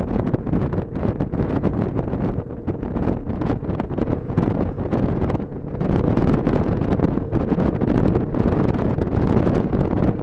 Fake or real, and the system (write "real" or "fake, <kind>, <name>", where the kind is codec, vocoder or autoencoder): fake, vocoder, Vocos